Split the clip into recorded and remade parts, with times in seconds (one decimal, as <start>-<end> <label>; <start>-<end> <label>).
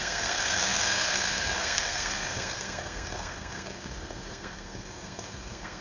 0.0-5.8 remade